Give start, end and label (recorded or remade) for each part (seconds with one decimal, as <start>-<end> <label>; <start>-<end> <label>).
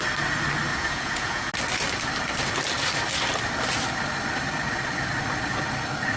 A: 0.0-0.7 recorded; 0.7-1.5 remade; 1.5-6.2 recorded